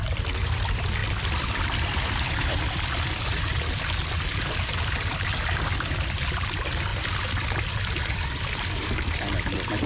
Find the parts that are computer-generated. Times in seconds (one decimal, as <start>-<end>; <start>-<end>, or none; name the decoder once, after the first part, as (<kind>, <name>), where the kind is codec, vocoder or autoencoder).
0.0-9.9 (vocoder, BigVGAN v2)